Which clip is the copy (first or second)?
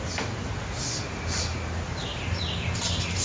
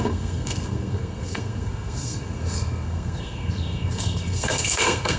second